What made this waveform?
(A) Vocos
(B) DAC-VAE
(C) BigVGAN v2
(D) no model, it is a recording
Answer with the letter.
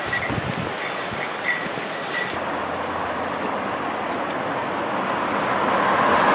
D